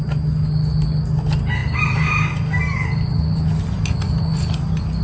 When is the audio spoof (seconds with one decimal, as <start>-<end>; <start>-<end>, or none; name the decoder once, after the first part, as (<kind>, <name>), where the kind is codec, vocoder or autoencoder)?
none